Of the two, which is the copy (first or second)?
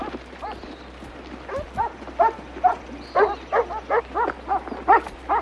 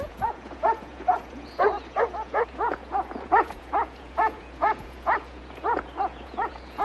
second